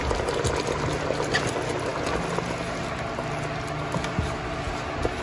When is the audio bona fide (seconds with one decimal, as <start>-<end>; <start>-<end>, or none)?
0.0-5.2